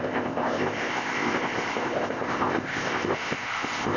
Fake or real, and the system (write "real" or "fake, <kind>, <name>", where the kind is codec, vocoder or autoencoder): fake, codec, ZipCodec